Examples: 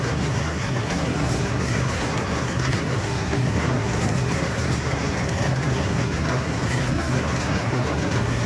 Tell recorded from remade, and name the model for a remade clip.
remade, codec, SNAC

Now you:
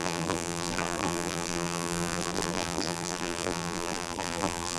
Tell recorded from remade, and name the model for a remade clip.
remade, vocoder, BigVGAN v2